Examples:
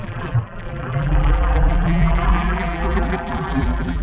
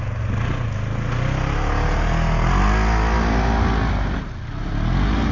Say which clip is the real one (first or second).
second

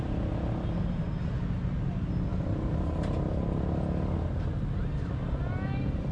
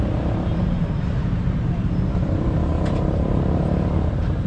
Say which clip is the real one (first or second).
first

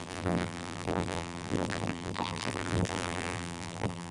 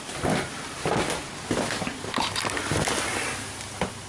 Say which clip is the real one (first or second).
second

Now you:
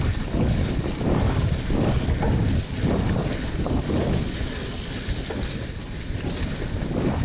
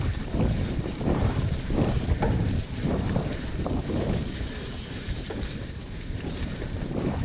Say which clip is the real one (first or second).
first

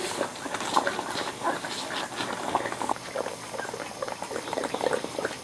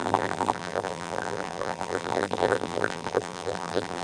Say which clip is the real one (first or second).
first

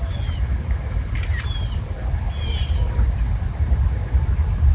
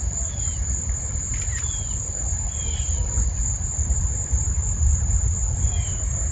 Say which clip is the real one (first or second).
first